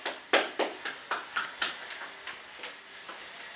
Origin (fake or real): real